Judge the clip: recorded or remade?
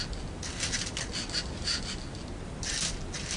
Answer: recorded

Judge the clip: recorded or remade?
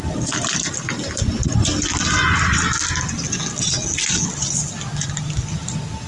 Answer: recorded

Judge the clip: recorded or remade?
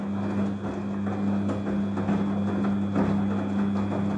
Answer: recorded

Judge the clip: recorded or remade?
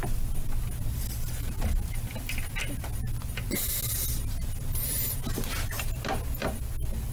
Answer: recorded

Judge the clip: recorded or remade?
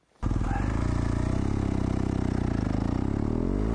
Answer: recorded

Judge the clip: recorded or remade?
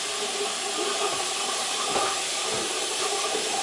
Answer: recorded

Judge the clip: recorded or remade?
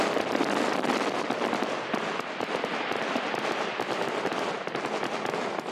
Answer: recorded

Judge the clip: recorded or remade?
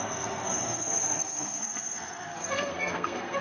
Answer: remade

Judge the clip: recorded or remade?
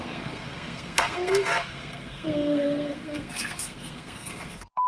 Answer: remade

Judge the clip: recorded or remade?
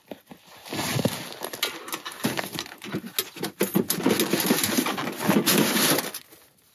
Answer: recorded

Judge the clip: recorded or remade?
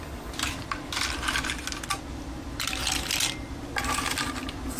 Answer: recorded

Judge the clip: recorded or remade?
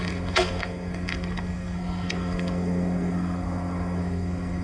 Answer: remade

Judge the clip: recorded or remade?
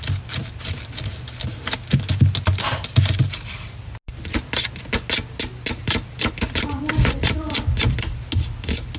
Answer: recorded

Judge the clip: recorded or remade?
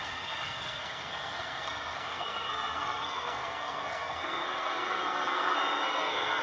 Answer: remade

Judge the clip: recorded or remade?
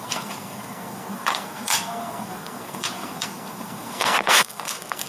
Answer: remade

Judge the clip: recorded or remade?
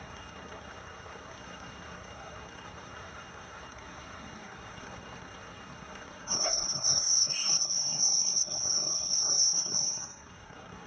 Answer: remade